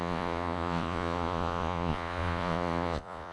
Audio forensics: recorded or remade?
remade